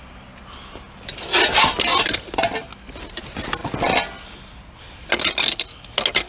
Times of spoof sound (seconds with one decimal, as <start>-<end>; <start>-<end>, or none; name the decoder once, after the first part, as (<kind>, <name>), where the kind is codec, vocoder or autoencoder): none